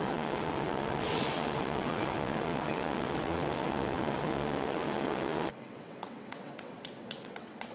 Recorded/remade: remade